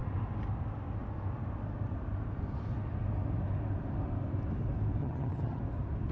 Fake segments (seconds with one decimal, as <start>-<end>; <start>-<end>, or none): 5.0-5.6